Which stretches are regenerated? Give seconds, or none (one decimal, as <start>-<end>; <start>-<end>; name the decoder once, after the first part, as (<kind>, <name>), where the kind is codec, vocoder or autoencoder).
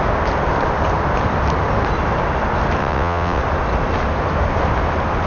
2.8-3.4 (vocoder, WaveNeXt)